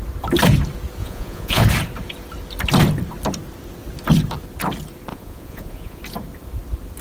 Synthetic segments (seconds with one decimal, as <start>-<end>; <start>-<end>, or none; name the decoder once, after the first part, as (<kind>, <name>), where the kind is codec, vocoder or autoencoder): 1.0-1.6 (vocoder, Vocos); 5.1-6.0

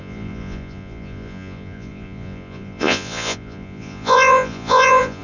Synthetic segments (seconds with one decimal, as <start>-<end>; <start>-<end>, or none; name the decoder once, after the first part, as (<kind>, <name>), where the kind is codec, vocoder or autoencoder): 0.0-5.2 (vocoder, Vocos)